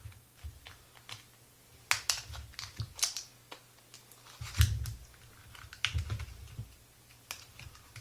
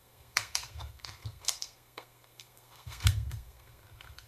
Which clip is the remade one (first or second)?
second